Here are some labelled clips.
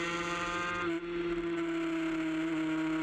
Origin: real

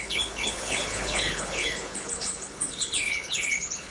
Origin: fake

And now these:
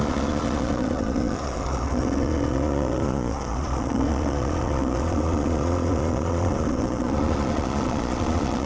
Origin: fake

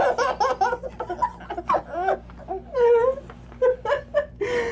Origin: real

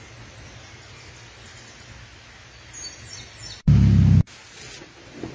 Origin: real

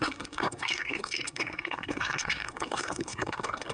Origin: fake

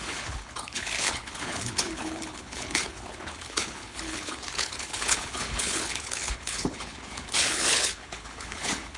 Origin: fake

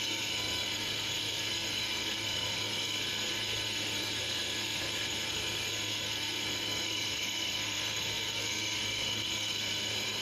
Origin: fake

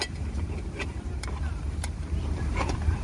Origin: fake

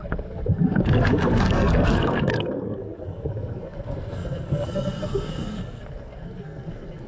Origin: fake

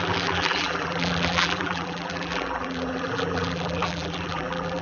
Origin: fake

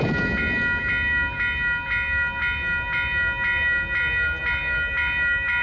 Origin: real